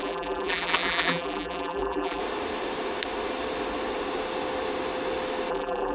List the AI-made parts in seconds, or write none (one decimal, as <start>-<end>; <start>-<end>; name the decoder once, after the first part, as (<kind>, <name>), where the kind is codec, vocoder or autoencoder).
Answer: 0.0-2.2 (vocoder, BigVGAN v2); 5.5-5.9